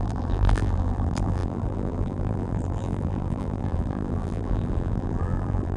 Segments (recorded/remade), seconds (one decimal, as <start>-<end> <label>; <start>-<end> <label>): 0.0-5.8 remade